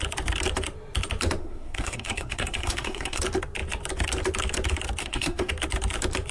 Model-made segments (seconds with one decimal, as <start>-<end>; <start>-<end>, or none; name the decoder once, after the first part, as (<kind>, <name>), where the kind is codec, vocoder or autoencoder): 1.4-3.2 (codec, SNAC); 5.0-5.5